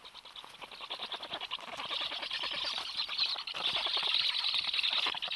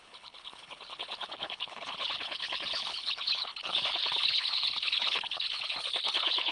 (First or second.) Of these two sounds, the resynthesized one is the second